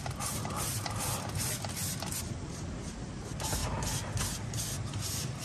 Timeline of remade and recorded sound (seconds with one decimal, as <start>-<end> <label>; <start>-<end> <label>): 0.0-5.4 recorded